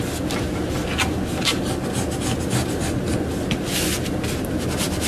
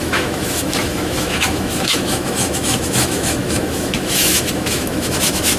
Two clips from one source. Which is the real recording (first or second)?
first